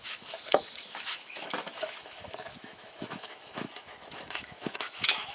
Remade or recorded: remade